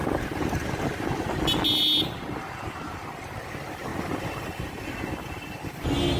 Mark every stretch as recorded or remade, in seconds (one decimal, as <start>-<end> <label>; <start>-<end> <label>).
0.0-1.1 remade; 1.1-6.2 recorded